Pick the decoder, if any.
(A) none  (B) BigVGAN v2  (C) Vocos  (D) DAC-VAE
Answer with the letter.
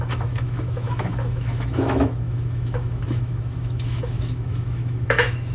D